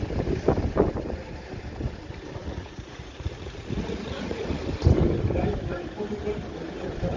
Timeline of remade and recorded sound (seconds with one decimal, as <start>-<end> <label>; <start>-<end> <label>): 0.0-2.4 recorded; 2.4-4.6 remade; 4.6-7.2 recorded

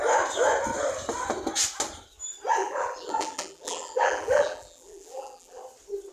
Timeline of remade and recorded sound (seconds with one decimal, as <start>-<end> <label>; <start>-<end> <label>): 0.0-2.6 recorded; 2.6-5.6 remade; 5.6-6.1 recorded

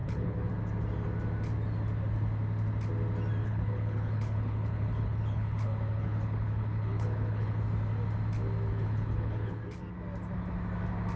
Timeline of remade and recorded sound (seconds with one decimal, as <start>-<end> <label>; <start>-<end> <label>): 0.0-0.5 remade; 0.5-3.4 recorded; 3.4-7.6 remade; 7.6-8.7 recorded; 8.7-9.6 remade; 9.6-11.2 recorded

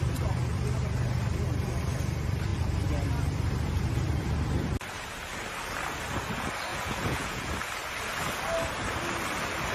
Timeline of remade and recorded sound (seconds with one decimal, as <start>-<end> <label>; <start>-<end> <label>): 0.0-6.7 recorded; 6.7-7.5 remade; 7.5-9.7 recorded

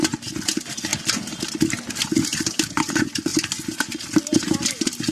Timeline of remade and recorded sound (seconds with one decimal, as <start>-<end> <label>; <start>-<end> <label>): 0.0-5.1 recorded

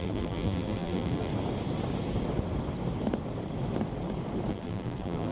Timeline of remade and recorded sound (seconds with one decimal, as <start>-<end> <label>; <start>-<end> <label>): 0.0-1.3 remade; 1.3-4.5 recorded; 4.5-5.3 remade

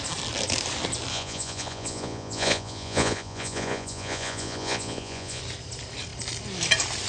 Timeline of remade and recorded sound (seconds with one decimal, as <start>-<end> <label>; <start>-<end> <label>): 0.0-1.1 recorded; 1.1-5.4 remade; 5.4-7.1 recorded